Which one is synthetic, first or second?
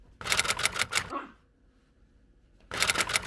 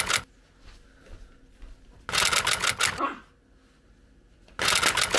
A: first